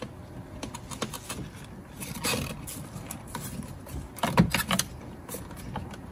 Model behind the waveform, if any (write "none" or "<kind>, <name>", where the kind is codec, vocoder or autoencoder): none